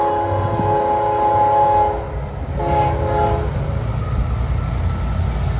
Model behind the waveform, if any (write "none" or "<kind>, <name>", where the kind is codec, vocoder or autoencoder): none